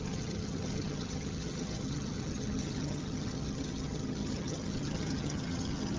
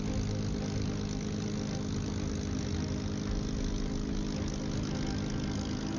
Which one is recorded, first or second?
second